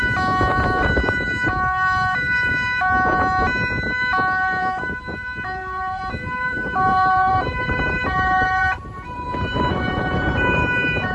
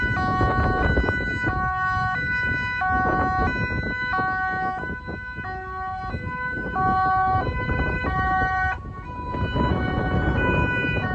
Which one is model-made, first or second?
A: first